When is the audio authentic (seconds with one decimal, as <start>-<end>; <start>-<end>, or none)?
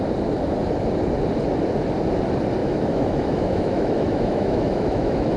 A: 0.0-2.6